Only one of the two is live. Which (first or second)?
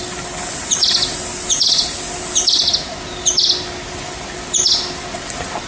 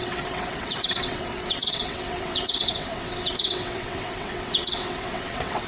first